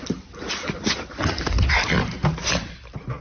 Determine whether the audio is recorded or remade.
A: remade